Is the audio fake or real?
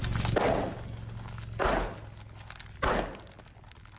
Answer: real